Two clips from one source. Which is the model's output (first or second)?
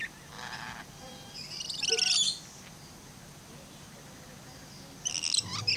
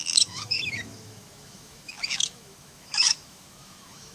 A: second